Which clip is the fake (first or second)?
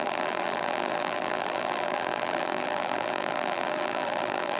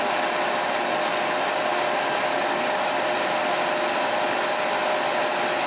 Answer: first